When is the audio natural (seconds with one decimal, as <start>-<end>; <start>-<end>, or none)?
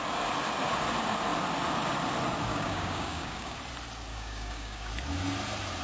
0.0-2.5; 3.6-4.1; 4.9-5.8